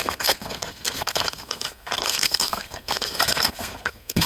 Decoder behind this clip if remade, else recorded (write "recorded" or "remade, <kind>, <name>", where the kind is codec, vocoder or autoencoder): remade, codec, SNAC